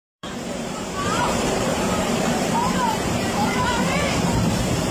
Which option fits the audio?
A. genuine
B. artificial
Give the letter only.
B